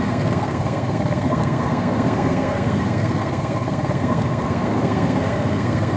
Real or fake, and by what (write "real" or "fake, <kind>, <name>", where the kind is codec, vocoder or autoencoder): fake, codec, SNAC